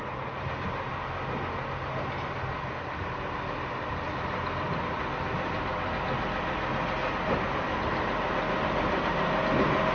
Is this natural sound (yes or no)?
yes